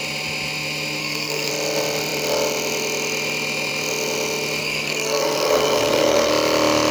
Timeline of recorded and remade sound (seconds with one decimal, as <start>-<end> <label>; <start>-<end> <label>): 0.0-1.0 recorded; 1.0-1.5 remade; 1.5-4.6 recorded; 4.6-6.3 remade; 6.3-6.9 recorded